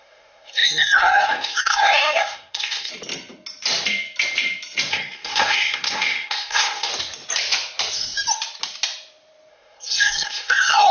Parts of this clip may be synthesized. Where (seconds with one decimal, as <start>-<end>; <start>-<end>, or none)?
0.0-2.9; 4.9-6.9; 9.5-10.9